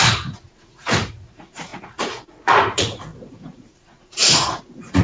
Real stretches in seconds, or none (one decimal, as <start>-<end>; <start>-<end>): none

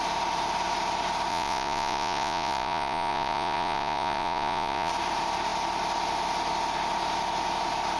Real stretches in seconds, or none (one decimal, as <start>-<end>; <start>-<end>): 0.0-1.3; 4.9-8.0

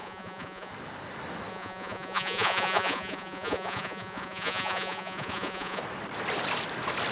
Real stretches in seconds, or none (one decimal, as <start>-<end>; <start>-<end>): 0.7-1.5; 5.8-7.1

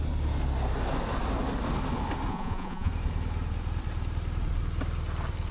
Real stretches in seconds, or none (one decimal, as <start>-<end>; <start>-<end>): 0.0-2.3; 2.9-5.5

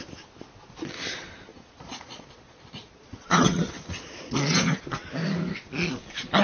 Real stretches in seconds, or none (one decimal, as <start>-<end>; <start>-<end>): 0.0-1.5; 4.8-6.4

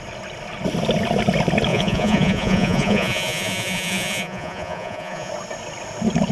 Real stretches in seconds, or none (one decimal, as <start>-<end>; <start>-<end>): 0.0-1.7; 5.3-6.3

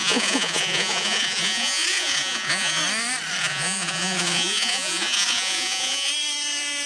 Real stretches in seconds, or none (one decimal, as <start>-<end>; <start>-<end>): 2.8-3.4; 6.1-6.9

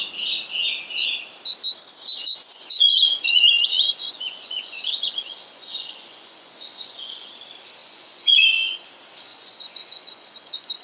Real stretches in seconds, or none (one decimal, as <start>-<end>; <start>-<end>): 0.0-2.2; 7.3-7.8; 8.9-9.3